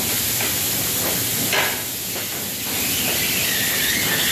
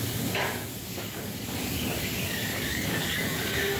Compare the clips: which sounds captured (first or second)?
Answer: first